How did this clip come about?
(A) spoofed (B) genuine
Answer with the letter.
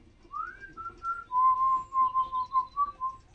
B